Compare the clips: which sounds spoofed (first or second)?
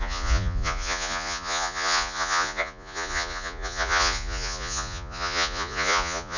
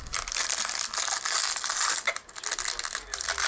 first